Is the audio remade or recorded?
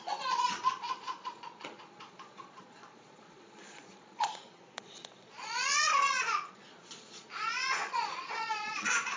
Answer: remade